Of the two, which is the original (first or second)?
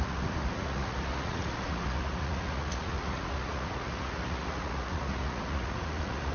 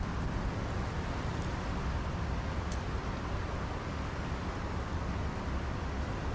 second